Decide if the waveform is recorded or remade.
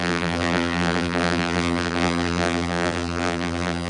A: remade